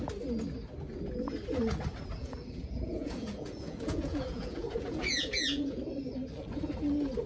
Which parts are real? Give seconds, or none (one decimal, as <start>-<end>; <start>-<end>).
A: 0.0-2.2; 5.8-7.3